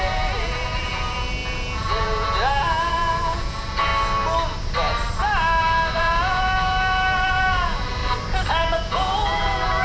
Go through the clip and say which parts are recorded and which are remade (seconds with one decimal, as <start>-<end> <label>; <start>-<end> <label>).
0.0-3.9 remade; 3.9-6.0 recorded; 6.0-8.0 remade; 8.0-8.5 recorded; 8.5-9.8 remade